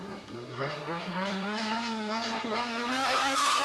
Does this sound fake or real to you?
fake